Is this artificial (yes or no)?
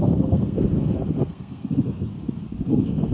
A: yes